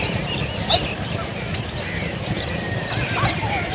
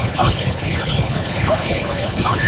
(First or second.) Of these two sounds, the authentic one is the first